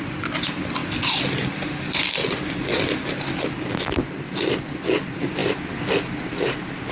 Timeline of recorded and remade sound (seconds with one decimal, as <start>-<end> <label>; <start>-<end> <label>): 0.0-5.4 recorded; 5.4-5.9 remade; 5.9-6.9 recorded